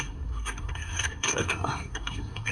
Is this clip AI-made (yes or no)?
yes